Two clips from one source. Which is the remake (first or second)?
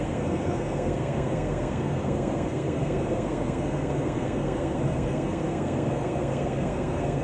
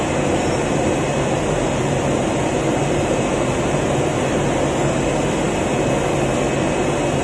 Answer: first